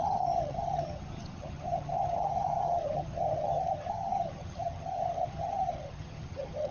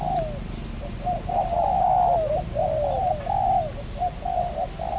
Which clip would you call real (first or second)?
second